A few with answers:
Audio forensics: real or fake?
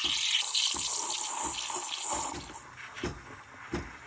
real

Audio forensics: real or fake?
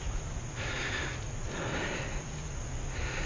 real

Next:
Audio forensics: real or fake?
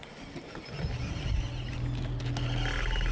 real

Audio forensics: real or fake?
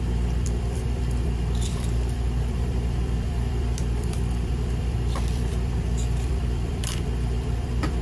fake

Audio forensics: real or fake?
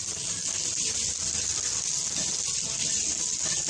real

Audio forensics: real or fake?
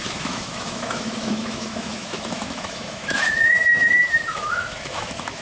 fake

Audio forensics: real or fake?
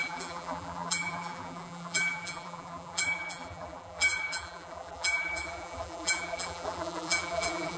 fake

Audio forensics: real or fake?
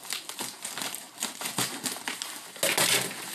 real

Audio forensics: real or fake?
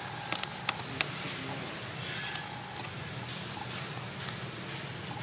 real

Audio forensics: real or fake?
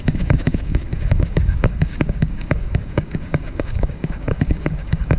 fake